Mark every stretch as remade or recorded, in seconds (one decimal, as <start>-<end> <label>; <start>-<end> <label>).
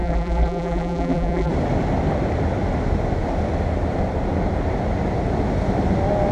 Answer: 0.0-1.5 remade; 1.5-6.3 recorded